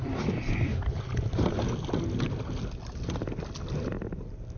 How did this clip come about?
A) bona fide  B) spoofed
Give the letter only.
A